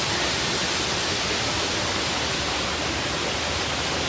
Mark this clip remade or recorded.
recorded